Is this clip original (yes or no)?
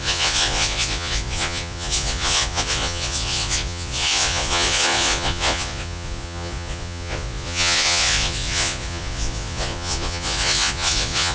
no